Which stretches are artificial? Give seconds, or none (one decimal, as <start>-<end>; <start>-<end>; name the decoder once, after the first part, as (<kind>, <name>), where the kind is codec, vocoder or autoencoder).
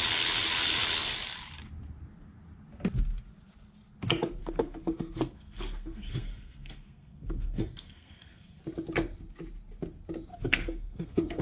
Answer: 4.4-8.6 (codec, SNAC); 10.3-11.4